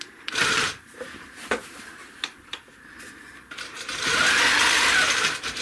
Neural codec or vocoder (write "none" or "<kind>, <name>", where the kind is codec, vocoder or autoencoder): vocoder, BigVGAN v2